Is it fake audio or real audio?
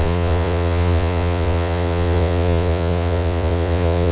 fake